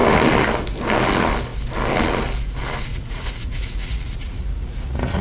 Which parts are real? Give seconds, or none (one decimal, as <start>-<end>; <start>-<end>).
0.0-2.9